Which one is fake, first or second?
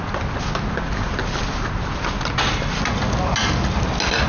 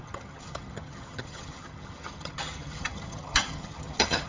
second